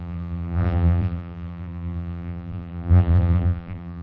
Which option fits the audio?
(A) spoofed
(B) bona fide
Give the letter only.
A